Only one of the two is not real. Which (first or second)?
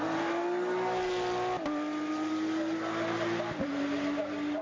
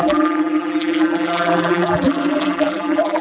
second